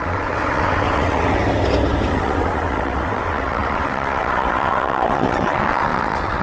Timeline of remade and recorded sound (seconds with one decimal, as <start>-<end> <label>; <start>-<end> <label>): 0.0-1.4 remade; 1.4-2.1 recorded; 2.1-6.4 remade